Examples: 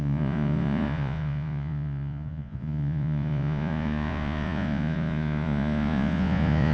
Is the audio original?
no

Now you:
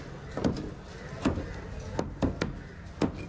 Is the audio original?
yes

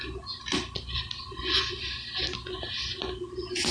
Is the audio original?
yes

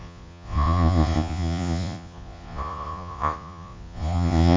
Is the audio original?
no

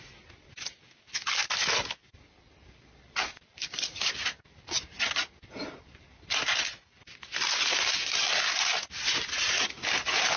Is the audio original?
yes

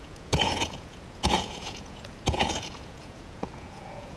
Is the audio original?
no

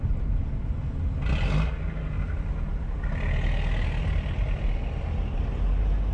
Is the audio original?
yes